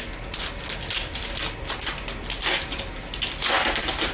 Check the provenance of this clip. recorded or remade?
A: recorded